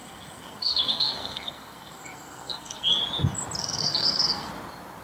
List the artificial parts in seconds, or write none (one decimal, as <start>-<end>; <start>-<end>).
0.0-3.0; 3.6-4.5